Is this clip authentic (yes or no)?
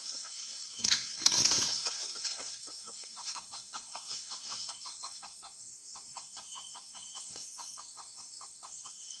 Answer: no